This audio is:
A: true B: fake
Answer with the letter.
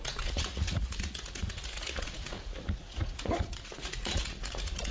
B